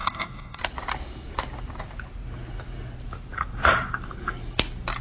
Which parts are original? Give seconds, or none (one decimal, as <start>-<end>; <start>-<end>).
0.6-5.0